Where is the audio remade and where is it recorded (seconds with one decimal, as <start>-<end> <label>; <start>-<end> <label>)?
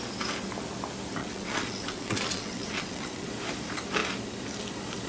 0.0-1.2 recorded; 1.2-3.3 remade; 3.3-5.1 recorded